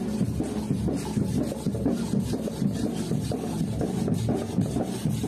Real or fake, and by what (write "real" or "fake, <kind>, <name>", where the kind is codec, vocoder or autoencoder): real